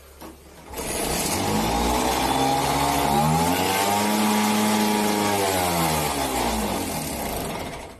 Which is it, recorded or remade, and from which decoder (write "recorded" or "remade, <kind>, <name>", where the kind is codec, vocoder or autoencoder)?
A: recorded